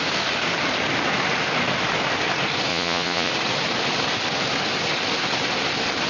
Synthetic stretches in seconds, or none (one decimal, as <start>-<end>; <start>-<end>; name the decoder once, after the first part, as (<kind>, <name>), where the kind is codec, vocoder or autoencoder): 2.7-3.3 (vocoder, Vocos)